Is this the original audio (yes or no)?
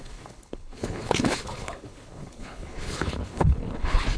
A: no